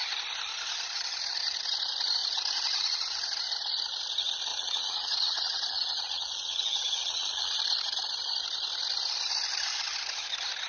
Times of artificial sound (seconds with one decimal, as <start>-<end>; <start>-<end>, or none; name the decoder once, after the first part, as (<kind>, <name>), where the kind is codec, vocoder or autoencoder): 0.5-1.3 (vocoder, Vocos); 4.5-7.6